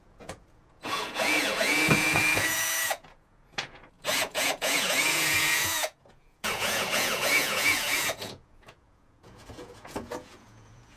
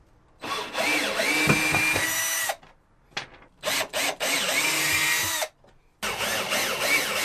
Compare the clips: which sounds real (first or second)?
second